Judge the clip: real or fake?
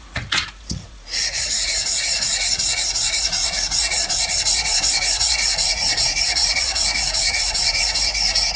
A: fake